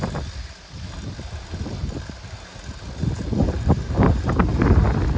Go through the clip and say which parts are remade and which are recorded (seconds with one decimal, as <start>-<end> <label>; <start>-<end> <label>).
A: 0.0-3.4 recorded; 3.4-4.3 remade; 4.3-5.2 recorded